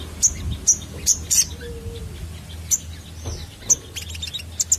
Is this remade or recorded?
recorded